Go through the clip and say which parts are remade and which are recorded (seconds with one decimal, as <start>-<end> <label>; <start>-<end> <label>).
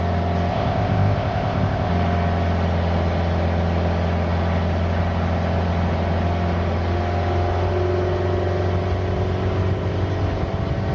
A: 0.0-0.5 recorded; 0.5-1.9 remade; 1.9-10.9 recorded